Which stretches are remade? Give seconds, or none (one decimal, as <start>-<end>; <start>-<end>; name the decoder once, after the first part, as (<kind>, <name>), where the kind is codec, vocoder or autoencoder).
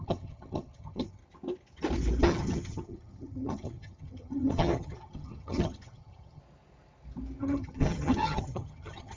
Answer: 0.0-1.2 (vocoder, HiFi-GAN); 2.2-6.4; 7.4-9.2